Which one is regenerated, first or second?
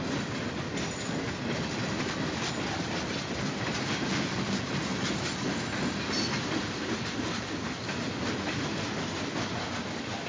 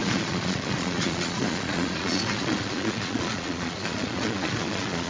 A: second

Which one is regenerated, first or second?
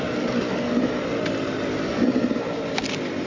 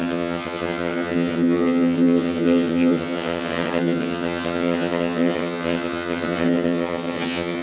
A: second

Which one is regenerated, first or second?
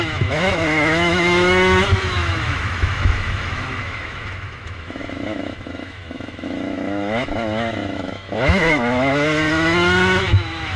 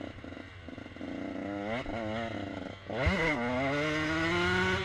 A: first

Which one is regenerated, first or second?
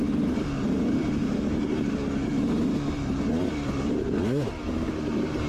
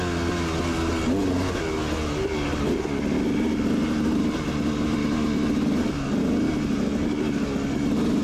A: first